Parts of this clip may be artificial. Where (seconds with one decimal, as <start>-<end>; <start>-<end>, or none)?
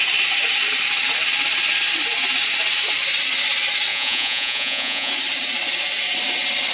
3.9-5.1